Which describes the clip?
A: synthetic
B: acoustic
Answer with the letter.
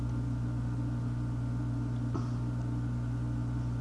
B